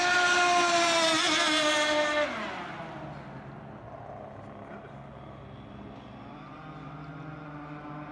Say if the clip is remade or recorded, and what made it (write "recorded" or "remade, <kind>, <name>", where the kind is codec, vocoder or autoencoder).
recorded